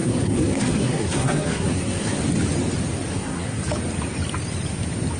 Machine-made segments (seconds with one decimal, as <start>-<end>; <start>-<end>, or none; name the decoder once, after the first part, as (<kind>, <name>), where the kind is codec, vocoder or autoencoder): 0.0-2.2 (codec, SNAC); 3.1-3.6